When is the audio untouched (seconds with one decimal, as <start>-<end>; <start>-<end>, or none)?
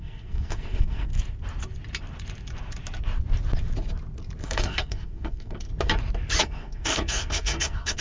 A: 1.1-4.4; 5.7-6.4